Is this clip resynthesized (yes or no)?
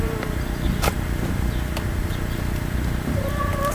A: yes